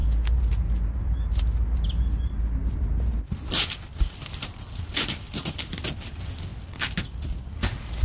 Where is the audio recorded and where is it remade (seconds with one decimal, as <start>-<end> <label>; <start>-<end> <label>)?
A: 0.0-8.0 recorded